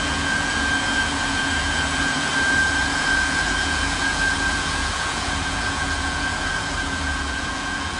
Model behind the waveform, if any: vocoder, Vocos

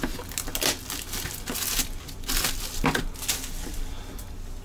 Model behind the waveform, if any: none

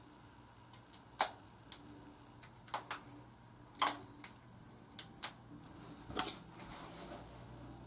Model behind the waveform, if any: none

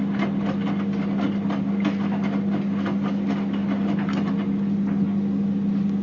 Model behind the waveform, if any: none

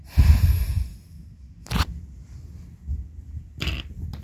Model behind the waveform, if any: none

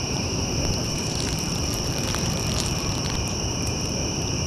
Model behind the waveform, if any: vocoder, BigVGAN v2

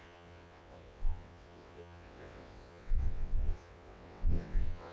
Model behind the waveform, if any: vocoder, WaveNeXt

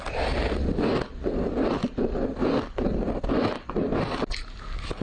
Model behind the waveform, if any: none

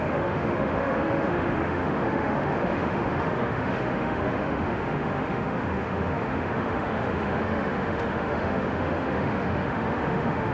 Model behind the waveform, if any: autoencoder, DAC-VAE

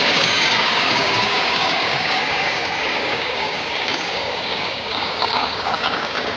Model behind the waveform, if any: codec, DAC